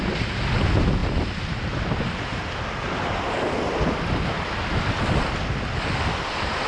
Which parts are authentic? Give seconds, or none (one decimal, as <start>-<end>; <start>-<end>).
0.0-6.7